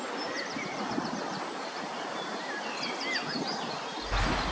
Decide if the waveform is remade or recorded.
recorded